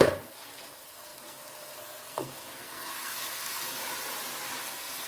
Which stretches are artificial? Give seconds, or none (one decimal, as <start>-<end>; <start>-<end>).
0.0-3.8; 4.6-5.1